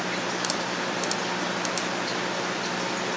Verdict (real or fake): real